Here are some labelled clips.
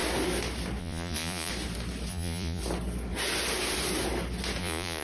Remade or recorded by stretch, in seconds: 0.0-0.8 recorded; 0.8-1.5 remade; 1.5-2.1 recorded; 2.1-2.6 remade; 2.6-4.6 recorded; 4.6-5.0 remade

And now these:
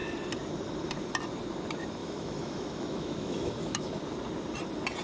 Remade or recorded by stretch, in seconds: 0.0-2.0 recorded; 2.0-3.9 remade; 3.9-5.0 recorded

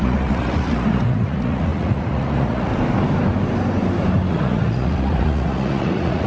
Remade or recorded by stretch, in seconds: 0.0-2.7 remade; 2.7-4.3 recorded; 4.3-6.3 remade

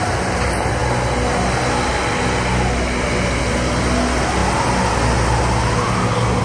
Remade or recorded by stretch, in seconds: 0.0-6.4 recorded

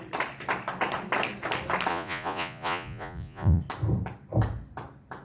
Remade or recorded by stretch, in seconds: 0.0-1.9 recorded; 1.9-3.6 remade; 3.6-5.2 recorded

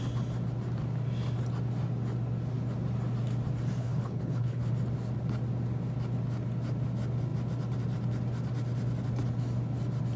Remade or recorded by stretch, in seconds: 0.0-3.8 recorded; 3.8-4.7 remade; 4.7-10.2 recorded